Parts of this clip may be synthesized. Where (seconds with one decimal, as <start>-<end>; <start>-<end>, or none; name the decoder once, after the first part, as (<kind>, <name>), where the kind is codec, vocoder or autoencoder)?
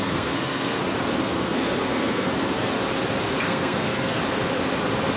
0.0-0.8 (codec, SNAC); 1.3-2.8; 3.4-4.2